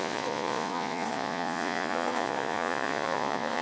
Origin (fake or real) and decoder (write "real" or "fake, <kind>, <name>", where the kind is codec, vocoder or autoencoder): fake, vocoder, Vocos